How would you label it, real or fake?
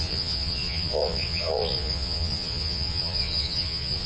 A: fake